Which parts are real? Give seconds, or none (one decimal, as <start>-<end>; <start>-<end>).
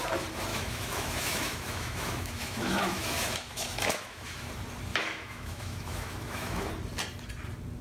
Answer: 0.0-0.5; 4.5-4.9; 6.7-7.8